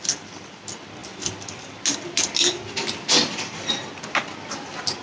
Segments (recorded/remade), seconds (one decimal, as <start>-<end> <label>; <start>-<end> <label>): 0.0-5.0 recorded